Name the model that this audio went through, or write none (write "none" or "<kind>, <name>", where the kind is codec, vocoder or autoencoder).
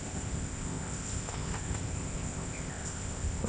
codec, ZipCodec